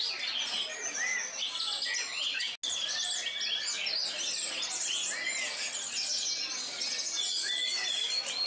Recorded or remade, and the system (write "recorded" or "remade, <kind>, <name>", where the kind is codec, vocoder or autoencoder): recorded